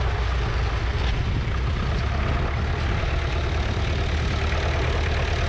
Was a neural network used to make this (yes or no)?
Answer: no